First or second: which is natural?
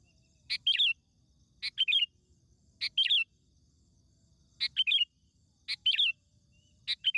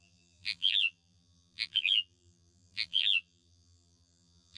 first